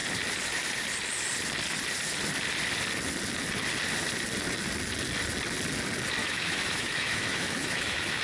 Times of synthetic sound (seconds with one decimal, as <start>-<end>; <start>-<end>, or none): 6.2-8.2